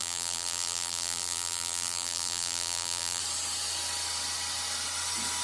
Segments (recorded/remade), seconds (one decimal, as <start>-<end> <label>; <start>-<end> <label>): 0.0-3.2 remade; 3.2-5.4 recorded